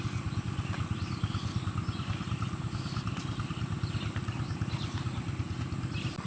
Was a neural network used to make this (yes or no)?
no